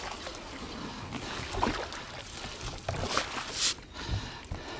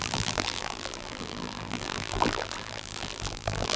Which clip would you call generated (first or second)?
second